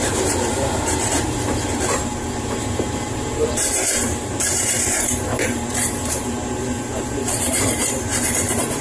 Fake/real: fake